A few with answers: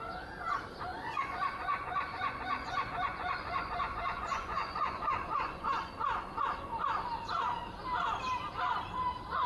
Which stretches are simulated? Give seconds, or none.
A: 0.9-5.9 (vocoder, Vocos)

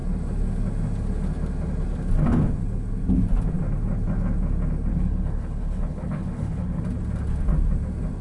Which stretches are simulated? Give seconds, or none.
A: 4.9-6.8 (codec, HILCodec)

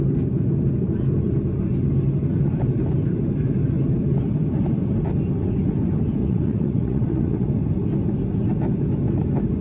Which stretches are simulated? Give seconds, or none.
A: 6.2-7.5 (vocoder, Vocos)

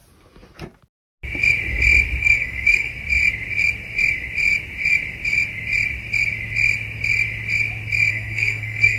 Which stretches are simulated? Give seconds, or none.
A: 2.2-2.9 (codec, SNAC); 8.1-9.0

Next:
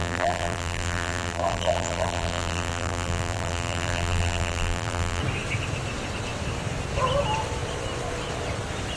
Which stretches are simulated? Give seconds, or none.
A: 0.0-5.2 (vocoder, BigVGAN v2)

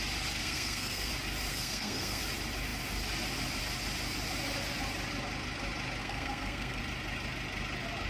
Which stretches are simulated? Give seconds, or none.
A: 0.4-1.1 (codec, SNAC); 1.5-2.2; 6.0-6.8